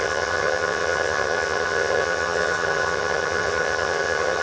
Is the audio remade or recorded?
remade